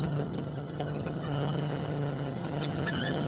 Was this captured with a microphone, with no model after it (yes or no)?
no